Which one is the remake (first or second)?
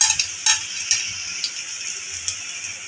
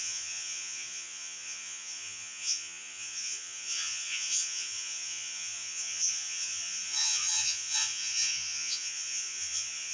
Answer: second